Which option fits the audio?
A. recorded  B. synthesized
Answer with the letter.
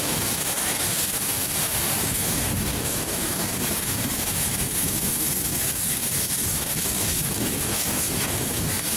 B